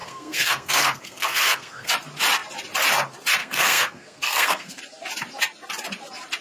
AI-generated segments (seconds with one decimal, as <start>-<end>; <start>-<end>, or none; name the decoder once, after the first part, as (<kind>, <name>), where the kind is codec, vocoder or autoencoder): 0.0-1.9 (codec, SNAC); 3.4-4.8